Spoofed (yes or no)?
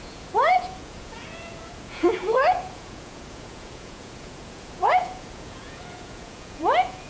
yes